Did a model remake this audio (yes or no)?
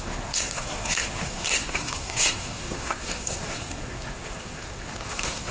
yes